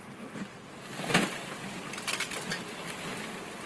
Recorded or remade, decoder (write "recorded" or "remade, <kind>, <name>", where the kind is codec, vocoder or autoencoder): recorded